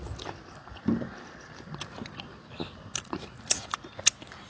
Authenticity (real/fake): real